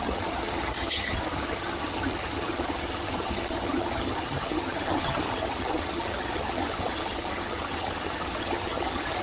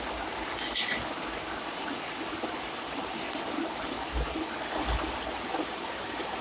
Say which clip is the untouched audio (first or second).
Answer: second